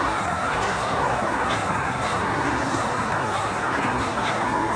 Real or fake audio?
fake